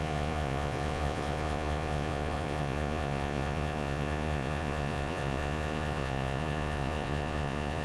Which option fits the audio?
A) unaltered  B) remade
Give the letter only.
B